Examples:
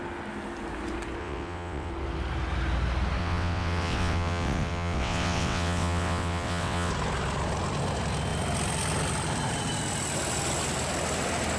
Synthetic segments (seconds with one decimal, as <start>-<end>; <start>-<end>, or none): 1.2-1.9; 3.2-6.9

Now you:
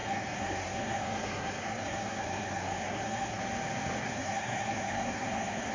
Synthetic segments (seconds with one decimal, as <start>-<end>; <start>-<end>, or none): 0.0-3.4; 4.0-5.7

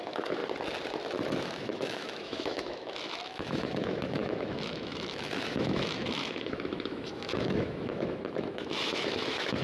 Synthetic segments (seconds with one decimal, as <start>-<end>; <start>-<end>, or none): 0.0-0.4; 1.4-9.6

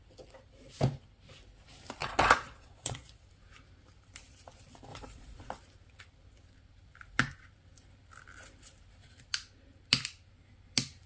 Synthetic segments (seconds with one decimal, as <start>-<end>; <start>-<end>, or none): 2.0-3.2; 4.9-5.5